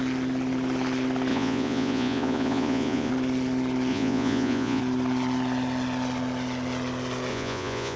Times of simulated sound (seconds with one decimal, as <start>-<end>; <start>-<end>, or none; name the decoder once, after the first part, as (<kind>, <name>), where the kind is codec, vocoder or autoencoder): 1.3-3.1 (vocoder, Vocos); 3.9-4.8; 7.3-8.0